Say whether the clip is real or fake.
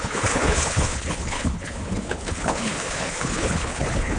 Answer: fake